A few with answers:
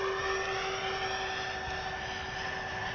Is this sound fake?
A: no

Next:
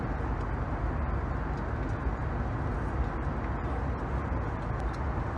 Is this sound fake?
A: no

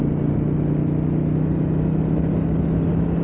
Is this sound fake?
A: no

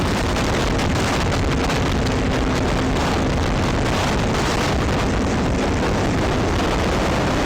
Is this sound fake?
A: no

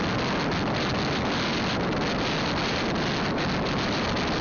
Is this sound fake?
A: no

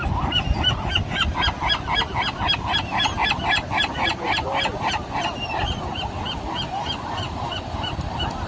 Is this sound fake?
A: no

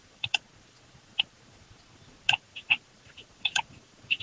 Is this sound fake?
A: yes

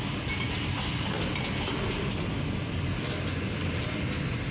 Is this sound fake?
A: no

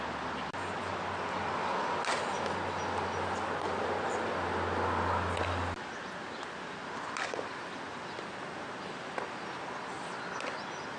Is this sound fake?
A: no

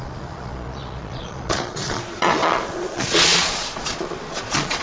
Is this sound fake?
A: yes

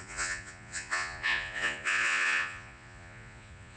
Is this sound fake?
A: yes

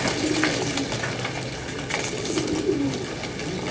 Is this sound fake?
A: no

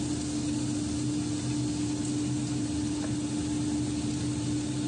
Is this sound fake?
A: no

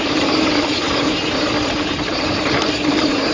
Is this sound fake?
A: no